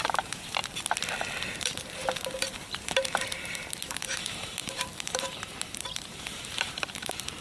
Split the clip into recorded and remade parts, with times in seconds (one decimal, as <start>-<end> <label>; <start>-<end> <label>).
0.0-0.6 remade; 0.6-1.4 recorded; 1.4-7.4 remade